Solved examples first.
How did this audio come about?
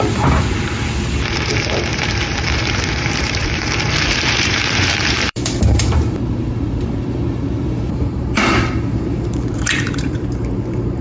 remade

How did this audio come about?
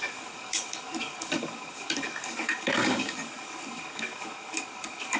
remade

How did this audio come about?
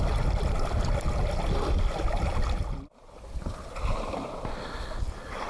recorded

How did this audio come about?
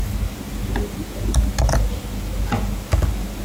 recorded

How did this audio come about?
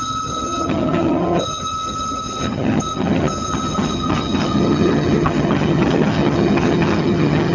remade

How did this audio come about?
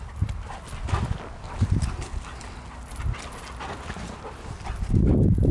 recorded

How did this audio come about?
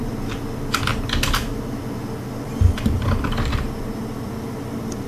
recorded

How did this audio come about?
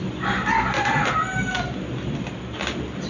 recorded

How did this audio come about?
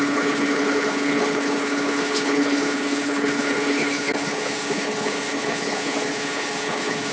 remade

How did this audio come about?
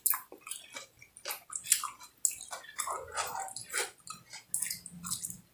recorded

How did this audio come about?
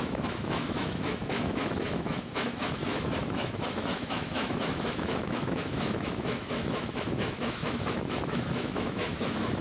remade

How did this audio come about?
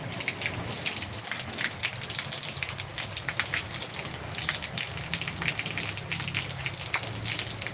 recorded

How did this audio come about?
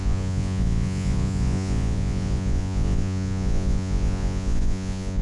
remade